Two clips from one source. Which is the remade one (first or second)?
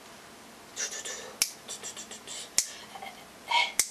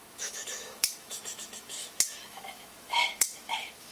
second